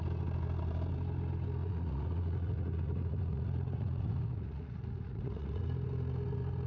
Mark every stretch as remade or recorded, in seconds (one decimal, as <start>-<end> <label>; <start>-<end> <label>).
0.0-1.6 recorded; 1.6-5.6 remade; 5.6-6.7 recorded